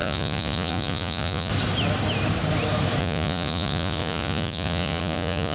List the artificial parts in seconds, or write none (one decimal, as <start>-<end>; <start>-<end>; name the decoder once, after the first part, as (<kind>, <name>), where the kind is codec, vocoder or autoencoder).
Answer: 0.0-1.5 (vocoder, Vocos); 3.0-5.5